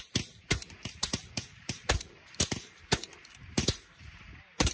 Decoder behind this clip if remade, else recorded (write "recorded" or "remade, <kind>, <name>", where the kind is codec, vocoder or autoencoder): remade, vocoder, BigVGAN v2